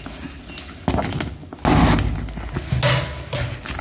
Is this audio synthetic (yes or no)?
no